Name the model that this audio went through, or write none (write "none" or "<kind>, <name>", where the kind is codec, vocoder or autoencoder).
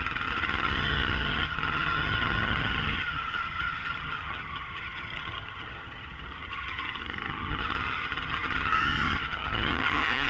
vocoder, HiFi-GAN